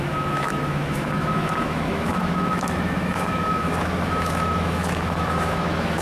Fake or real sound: fake